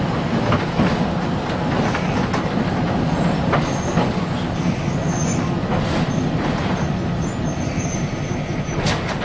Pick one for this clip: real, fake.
real